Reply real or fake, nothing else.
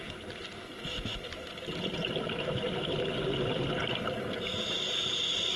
real